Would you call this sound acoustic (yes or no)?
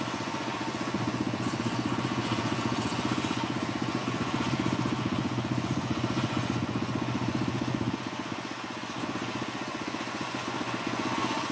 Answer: no